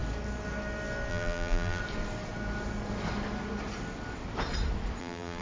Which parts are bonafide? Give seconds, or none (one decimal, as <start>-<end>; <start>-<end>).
0.0-1.1; 1.8-5.0